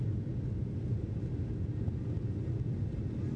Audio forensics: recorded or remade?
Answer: recorded